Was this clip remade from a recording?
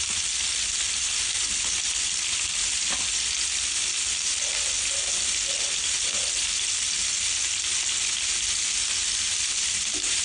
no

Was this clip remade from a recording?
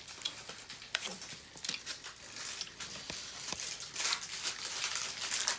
no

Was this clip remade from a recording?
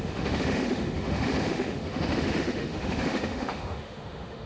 yes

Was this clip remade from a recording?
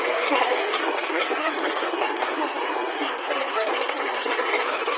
yes